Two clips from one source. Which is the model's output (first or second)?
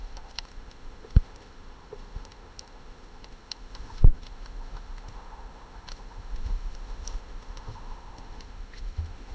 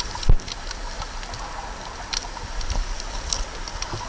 first